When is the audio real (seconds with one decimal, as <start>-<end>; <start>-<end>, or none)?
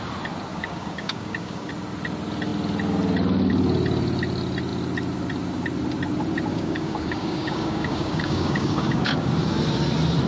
0.0-0.5; 1.7-6.5; 9.3-10.3